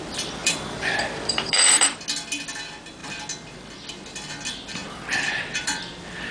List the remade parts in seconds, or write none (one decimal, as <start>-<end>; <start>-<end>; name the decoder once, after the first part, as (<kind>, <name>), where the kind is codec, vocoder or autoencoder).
0.4-2.0 (vocoder, BigVGAN v2); 4.8-5.8